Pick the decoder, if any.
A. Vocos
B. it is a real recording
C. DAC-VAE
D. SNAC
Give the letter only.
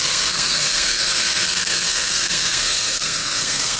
D